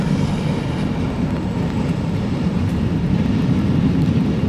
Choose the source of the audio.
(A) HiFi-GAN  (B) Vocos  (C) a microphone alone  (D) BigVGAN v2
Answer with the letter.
C